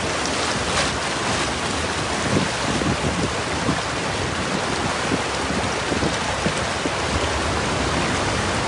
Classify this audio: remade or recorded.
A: recorded